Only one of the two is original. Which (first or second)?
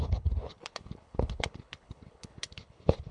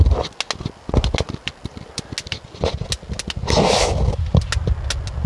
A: second